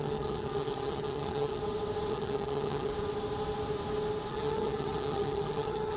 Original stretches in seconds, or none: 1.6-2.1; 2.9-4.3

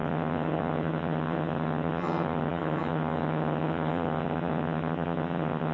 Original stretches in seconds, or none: none